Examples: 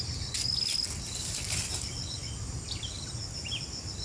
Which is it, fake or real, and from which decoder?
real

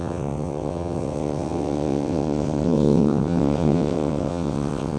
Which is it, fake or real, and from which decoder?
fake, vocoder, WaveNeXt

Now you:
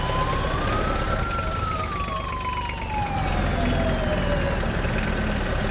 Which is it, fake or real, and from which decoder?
real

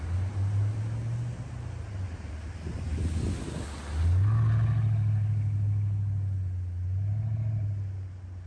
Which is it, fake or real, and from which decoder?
real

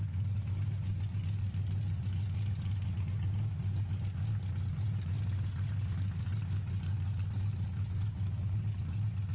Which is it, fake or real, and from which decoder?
real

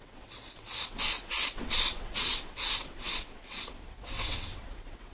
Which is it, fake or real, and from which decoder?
fake, vocoder, WaveNeXt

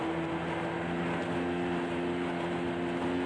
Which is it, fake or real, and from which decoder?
real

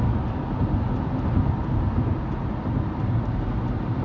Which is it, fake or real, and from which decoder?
real